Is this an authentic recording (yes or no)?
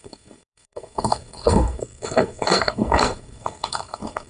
no